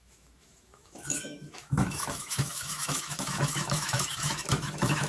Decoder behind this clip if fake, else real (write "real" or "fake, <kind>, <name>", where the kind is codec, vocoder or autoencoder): fake, autoencoder, DAC-VAE